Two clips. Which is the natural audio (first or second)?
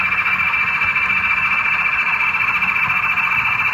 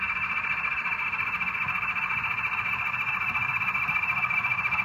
first